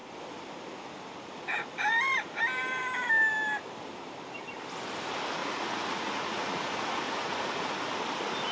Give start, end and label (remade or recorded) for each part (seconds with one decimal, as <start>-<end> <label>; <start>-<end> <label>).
0.0-5.4 recorded; 5.4-7.9 remade; 7.9-8.5 recorded